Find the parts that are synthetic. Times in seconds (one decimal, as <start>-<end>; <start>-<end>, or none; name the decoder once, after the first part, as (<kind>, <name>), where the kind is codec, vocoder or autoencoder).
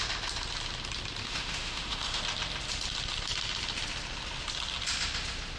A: 1.2-2.2 (autoencoder, DAC-VAE)